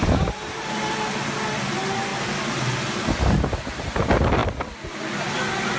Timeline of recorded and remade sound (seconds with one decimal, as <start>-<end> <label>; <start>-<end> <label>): 0.0-2.1 recorded; 2.1-3.8 remade; 3.8-5.8 recorded